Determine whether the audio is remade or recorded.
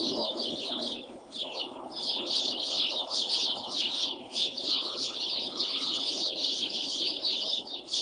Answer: remade